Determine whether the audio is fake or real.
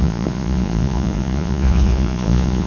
fake